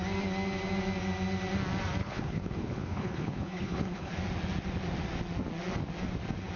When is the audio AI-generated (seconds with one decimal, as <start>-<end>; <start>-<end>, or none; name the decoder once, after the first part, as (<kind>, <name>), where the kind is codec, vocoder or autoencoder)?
2.0-4.1 (codec, HILCodec)